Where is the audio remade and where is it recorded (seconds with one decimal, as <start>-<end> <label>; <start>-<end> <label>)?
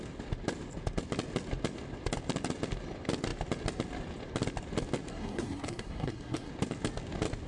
0.0-5.1 recorded; 5.1-6.5 remade; 6.5-7.5 recorded